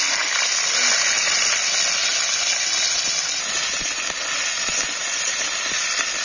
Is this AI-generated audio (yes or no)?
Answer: no